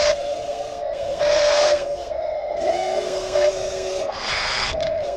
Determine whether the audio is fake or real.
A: fake